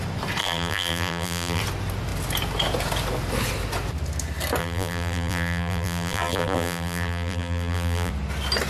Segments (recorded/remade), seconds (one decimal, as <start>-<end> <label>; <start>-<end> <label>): 0.0-0.4 recorded; 0.4-1.6 remade; 1.6-4.6 recorded; 4.6-8.1 remade; 8.1-8.7 recorded